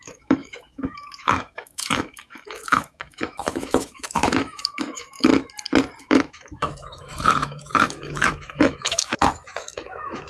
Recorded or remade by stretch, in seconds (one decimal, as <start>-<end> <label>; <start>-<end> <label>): 0.0-5.3 remade; 5.3-6.0 recorded; 6.0-10.3 remade